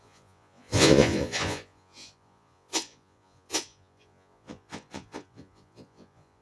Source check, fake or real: fake